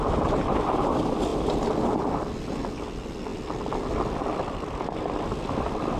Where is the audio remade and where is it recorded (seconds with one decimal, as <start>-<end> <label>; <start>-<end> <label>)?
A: 0.0-6.0 recorded